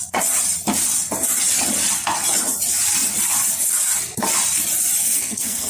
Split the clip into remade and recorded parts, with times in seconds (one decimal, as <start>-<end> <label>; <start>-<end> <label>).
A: 0.0-5.0 recorded; 5.0-5.7 remade